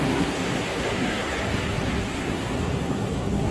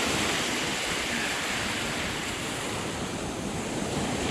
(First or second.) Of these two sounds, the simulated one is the first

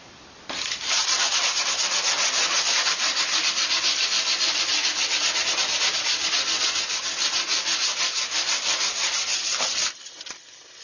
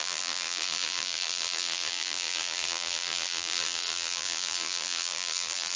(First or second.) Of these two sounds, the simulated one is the second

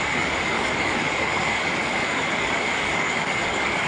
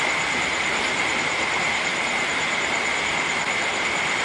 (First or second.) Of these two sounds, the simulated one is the first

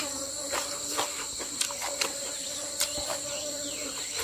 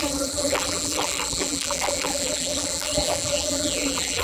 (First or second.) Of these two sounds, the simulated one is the second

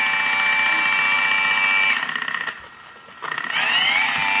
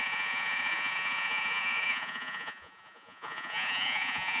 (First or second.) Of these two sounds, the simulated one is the second